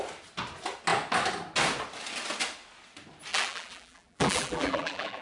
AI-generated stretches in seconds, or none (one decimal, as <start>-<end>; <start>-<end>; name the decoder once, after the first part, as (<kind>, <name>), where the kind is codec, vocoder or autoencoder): 3.3-5.2 (vocoder, BigVGAN v2)